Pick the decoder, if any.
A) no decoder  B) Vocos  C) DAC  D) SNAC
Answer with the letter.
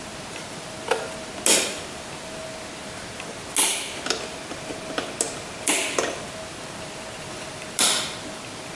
A